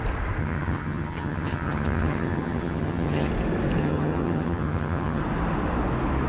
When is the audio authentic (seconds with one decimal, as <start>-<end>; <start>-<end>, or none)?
0.0-0.4; 3.3-3.8; 5.2-6.3

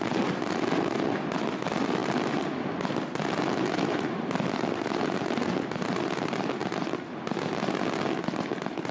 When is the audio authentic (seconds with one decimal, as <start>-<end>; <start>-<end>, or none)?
0.0-8.9